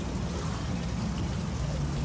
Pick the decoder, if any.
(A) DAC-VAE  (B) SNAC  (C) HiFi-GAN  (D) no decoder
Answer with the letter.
D